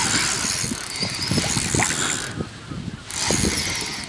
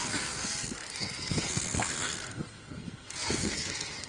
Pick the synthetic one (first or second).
second